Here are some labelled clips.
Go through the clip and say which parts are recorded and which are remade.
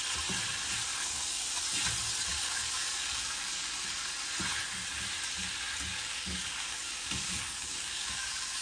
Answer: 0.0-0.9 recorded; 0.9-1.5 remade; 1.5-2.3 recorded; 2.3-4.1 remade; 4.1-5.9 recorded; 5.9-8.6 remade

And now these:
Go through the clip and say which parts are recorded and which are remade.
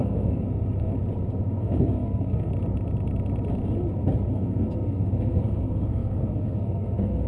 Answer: 0.0-0.9 remade; 0.9-1.6 recorded; 1.6-2.5 remade; 2.5-4.3 recorded; 4.3-7.3 remade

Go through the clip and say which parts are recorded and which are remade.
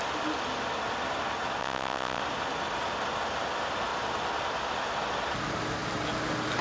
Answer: 0.0-1.6 recorded; 1.6-2.2 remade; 2.2-6.6 recorded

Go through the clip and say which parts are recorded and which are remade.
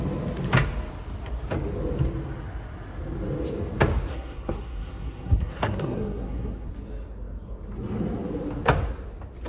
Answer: 0.0-4.1 recorded; 4.1-6.7 remade; 6.7-9.5 recorded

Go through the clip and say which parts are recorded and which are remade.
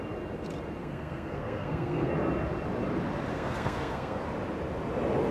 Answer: 0.0-0.8 recorded; 0.8-2.1 remade; 2.1-3.3 recorded; 3.3-4.2 remade; 4.2-5.3 recorded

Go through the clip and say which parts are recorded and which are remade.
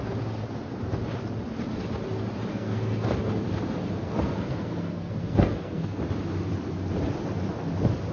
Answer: 0.0-2.5 recorded; 2.5-3.1 remade; 3.1-4.0 recorded; 4.0-6.0 remade; 6.0-8.1 recorded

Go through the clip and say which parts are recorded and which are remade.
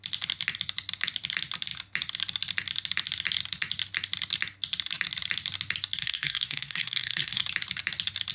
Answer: 0.0-6.0 recorded; 6.0-7.4 remade; 7.4-8.3 recorded